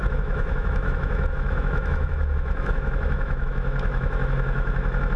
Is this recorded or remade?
remade